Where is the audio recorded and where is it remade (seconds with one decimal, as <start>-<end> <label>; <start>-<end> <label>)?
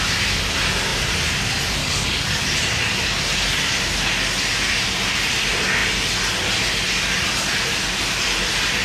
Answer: 0.0-1.8 recorded; 1.8-2.4 remade; 2.4-8.8 recorded